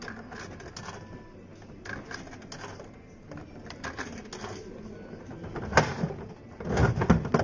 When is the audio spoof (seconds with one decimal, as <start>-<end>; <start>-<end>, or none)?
none